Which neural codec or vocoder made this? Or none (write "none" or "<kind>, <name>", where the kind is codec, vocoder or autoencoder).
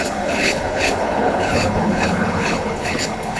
codec, HILCodec